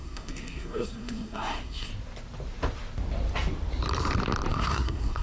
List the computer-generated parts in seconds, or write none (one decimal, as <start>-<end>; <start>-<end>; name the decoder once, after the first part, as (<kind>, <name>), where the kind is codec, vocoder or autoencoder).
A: 0.0-1.9 (codec, SNAC); 4.5-5.2

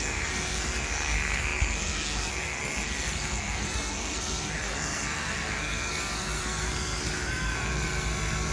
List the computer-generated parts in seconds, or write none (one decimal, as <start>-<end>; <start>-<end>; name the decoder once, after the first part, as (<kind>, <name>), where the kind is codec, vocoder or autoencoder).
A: 0.0-8.5 (codec, SNAC)

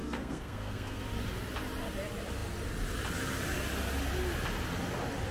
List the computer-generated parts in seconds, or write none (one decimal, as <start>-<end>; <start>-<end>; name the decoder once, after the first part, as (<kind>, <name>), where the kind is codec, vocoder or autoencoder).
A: 0.0-1.0 (codec, SNAC)

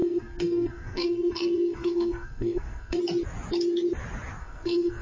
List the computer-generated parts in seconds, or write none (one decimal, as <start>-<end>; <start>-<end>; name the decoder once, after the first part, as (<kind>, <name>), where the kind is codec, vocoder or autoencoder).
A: 0.0-3.0 (codec, SNAC); 4.4-5.0